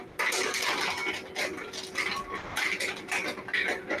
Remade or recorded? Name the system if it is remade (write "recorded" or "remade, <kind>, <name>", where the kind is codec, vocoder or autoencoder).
recorded